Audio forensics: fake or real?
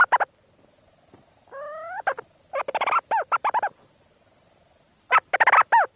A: real